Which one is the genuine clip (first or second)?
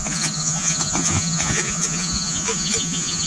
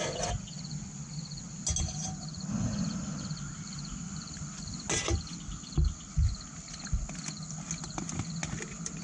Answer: second